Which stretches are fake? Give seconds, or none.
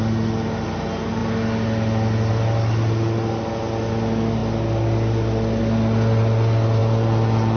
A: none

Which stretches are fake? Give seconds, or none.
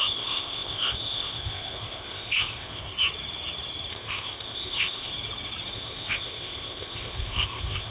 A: 0.0-2.9 (codec, ZipCodec); 3.9-5.1; 5.7-7.9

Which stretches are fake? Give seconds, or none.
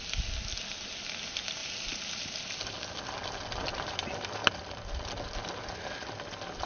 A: none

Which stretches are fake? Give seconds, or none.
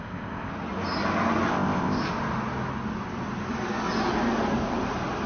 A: 0.0-0.5 (codec, ZipCodec); 1.5-2.0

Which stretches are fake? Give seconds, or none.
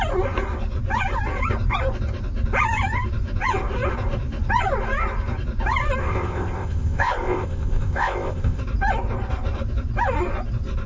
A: 6.0-8.6 (codec, ZipCodec)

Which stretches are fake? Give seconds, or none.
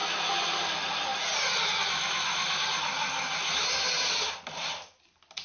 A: none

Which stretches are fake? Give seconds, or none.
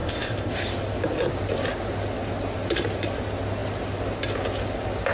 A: 0.0-0.5 (codec, ZipCodec)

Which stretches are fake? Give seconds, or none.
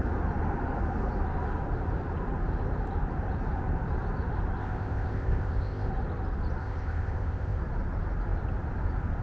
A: 4.6-5.9 (codec, ZipCodec); 6.6-7.6